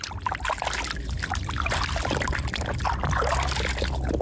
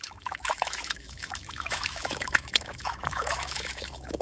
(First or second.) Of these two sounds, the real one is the first